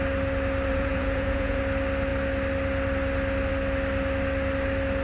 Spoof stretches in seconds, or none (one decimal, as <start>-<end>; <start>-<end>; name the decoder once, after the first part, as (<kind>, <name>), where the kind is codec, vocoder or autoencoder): 0.7-1.6 (vocoder, Vocos)